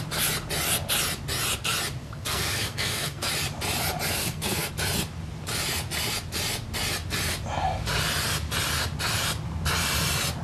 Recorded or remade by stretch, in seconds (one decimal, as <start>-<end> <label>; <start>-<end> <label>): 0.0-2.0 recorded; 2.0-3.3 remade; 3.3-4.2 recorded; 4.2-4.7 remade; 4.7-10.4 recorded